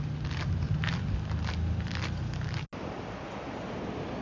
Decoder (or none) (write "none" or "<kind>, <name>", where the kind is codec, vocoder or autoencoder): none